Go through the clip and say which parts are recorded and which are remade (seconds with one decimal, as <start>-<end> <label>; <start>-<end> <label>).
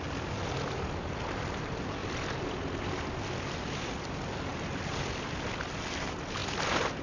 0.0-2.0 recorded; 2.0-3.1 remade; 3.1-6.4 recorded; 6.4-7.0 remade